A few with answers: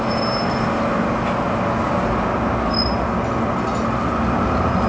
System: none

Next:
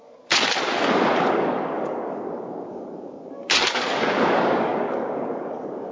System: codec, DAC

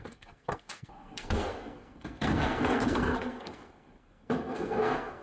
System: codec, SNAC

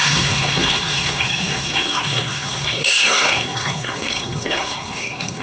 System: codec, SNAC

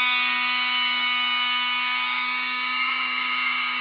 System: codec, DAC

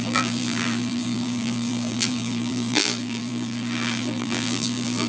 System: vocoder, BigVGAN v2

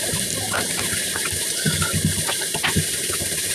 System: none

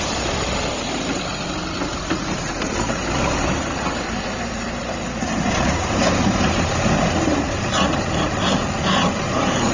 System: vocoder, BigVGAN v2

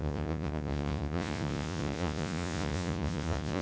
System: vocoder, Vocos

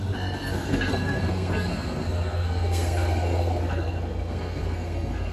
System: codec, SNAC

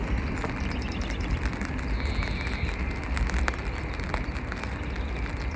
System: none